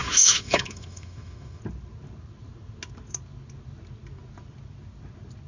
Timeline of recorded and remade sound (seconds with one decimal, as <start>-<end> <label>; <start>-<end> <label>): 0.0-1.6 remade; 1.6-5.5 recorded